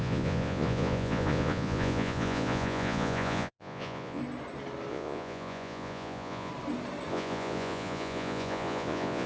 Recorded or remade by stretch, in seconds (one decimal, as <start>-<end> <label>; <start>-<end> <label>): 0.0-4.2 remade; 4.2-4.9 recorded; 4.9-6.5 remade; 6.5-7.1 recorded; 7.1-9.3 remade